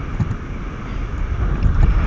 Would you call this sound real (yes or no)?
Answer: yes